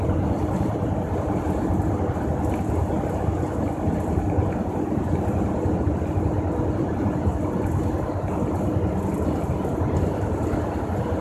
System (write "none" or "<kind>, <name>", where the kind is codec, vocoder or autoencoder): none